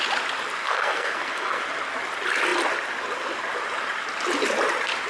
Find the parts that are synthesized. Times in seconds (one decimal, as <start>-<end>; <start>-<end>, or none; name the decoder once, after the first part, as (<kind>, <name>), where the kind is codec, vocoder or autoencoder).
0.6-1.6 (codec, SNAC)